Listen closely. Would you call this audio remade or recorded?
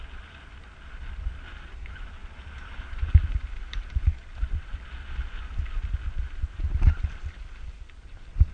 recorded